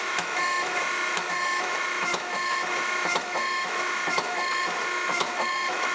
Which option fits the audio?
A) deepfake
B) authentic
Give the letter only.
A